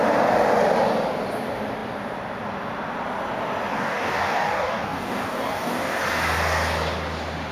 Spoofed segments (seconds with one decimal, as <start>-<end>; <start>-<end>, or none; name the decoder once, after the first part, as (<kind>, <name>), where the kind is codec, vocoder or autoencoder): 3.7-6.0 (codec, DAC)